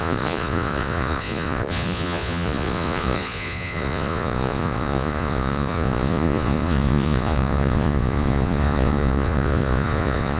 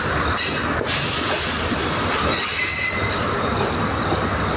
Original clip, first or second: second